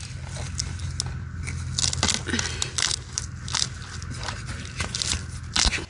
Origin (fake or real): real